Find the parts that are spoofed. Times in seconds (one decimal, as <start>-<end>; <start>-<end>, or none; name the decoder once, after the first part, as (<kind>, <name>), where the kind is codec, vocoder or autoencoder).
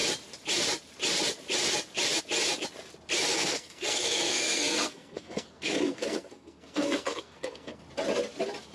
3.3-7.8 (codec, SNAC)